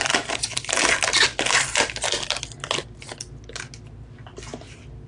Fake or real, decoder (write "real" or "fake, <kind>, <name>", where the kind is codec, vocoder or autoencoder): real